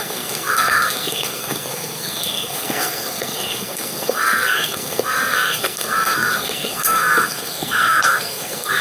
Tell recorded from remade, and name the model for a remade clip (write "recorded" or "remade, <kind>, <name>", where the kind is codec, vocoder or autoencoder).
remade, codec, SNAC